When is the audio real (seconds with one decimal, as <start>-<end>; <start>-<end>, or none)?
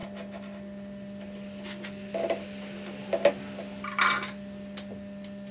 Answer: 0.0-5.5